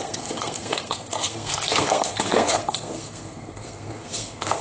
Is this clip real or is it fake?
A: fake